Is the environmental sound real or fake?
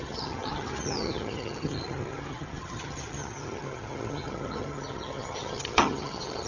fake